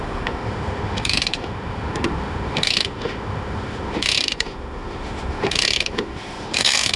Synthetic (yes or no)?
yes